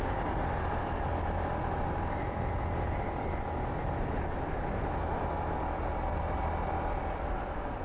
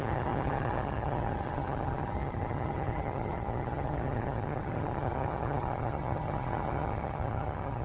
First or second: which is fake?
second